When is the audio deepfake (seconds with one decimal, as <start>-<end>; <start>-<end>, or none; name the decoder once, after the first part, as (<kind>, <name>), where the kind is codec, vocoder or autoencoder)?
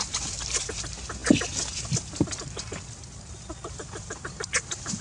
none